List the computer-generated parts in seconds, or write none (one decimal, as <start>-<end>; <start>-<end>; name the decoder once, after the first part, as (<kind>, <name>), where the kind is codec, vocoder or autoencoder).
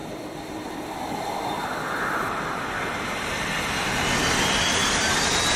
none